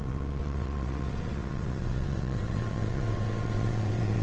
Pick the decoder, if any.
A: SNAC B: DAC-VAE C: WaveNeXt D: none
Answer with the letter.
C